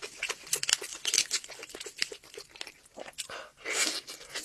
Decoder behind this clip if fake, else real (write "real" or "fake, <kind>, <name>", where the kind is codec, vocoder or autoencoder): real